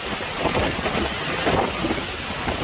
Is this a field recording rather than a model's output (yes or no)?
yes